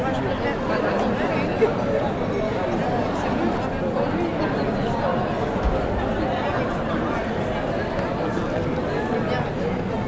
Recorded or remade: recorded